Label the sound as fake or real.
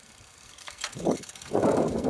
fake